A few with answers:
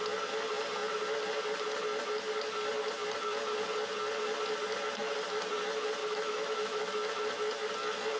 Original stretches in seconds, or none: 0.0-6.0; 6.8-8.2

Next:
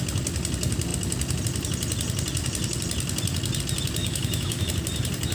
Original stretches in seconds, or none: 0.0-4.0; 4.7-5.3

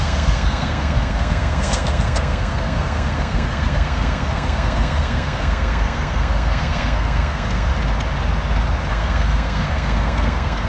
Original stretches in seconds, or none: 7.7-8.9